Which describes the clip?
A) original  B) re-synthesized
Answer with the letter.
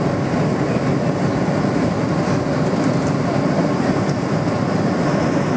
A